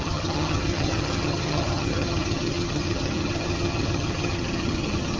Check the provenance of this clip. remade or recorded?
remade